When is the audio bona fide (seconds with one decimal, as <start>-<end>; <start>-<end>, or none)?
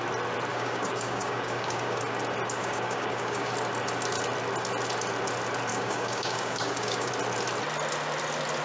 0.0-0.5; 2.0-2.6; 3.5-5.7; 7.1-8.6